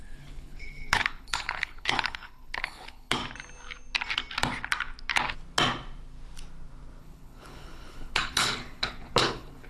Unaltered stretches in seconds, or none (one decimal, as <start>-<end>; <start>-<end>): 3.2-7.0

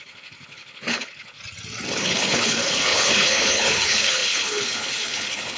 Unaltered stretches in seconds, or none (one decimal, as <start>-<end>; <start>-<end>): 1.4-1.9

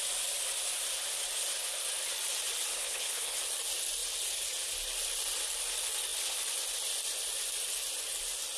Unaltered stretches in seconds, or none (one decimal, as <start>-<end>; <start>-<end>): 0.0-2.7; 3.4-8.6

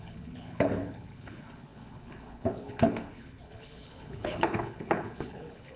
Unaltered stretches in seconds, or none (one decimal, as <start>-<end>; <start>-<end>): none